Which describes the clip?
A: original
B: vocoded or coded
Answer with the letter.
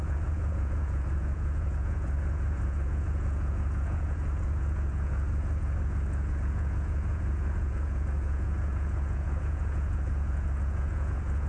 B